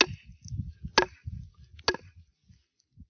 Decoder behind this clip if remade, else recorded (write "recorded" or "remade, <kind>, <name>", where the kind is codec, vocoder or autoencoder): recorded